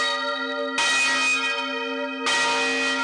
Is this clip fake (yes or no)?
no